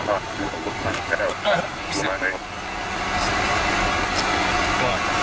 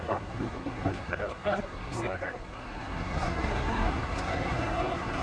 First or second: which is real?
first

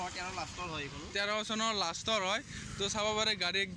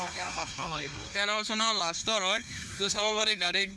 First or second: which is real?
first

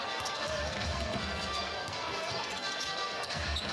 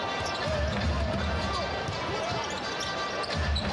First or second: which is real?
second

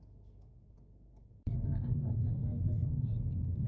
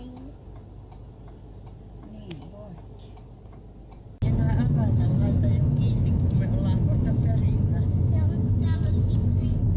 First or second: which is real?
second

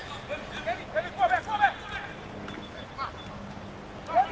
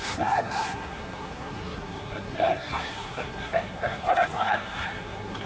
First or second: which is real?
first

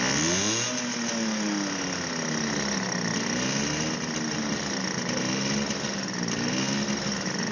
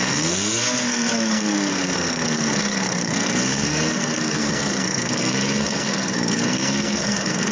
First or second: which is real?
first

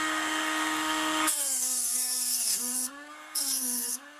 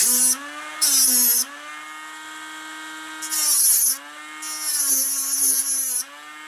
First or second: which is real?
second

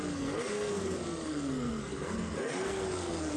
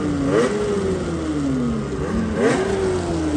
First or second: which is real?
second